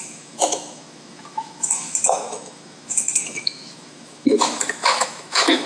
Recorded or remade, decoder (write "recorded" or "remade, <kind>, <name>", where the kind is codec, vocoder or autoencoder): remade, autoencoder, DAC-VAE